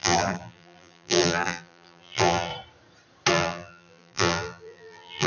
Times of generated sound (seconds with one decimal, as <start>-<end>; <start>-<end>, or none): 0.0-2.5; 3.3-5.3